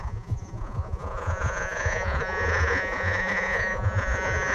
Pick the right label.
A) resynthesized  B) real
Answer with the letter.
A